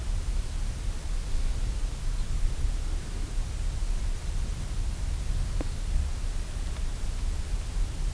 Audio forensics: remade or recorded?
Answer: recorded